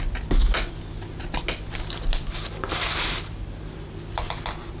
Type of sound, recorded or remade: recorded